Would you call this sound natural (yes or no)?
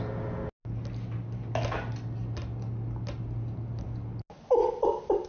yes